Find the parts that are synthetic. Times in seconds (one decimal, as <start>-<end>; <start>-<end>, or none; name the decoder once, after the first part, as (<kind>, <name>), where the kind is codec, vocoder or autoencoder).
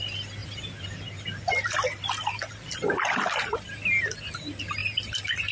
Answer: 0.4-3.7 (vocoder, BigVGAN v2); 4.8-5.5